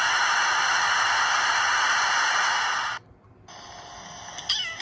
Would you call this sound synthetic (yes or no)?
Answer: no